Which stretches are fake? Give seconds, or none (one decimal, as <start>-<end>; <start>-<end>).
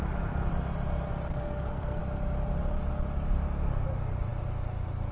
1.3-2.0